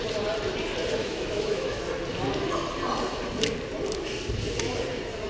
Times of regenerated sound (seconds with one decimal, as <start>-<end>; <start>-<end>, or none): 1.0-1.8